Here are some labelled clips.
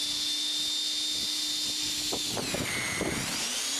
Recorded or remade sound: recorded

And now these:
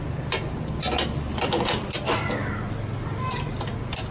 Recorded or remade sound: recorded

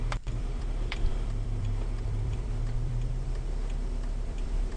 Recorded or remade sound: remade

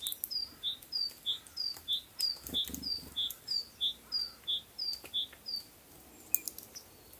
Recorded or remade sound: recorded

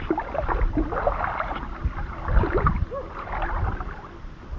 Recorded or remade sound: recorded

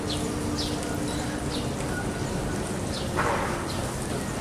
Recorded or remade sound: recorded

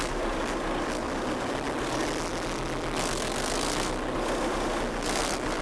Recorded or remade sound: recorded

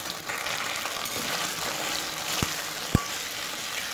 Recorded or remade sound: recorded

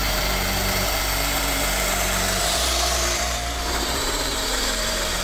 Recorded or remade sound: remade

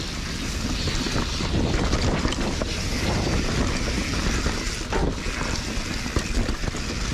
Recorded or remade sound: recorded